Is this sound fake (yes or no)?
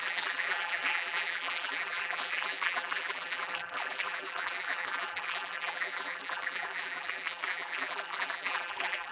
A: yes